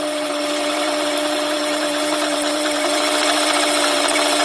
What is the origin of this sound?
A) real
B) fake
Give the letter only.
B